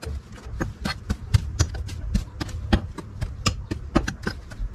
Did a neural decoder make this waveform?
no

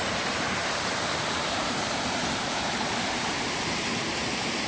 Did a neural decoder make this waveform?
yes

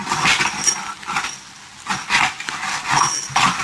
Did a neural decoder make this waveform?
no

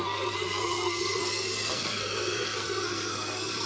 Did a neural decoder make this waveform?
yes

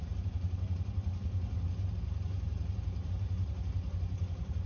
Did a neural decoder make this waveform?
no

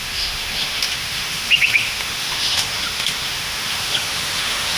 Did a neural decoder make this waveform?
yes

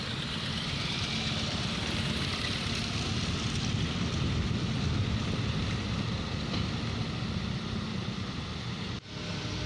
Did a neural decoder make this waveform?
no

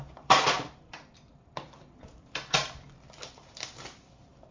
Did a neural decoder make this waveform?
yes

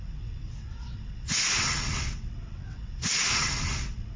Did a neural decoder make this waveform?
yes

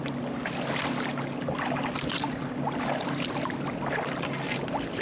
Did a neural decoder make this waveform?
no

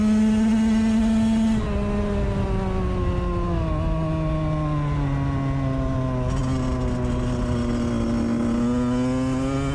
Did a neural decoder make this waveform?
no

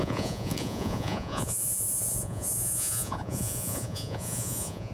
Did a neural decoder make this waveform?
yes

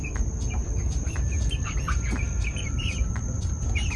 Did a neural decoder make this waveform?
yes